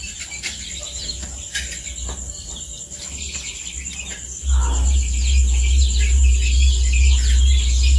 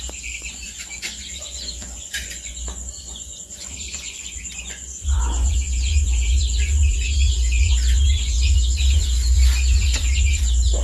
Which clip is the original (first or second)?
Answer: first